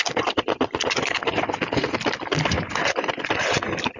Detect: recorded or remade recorded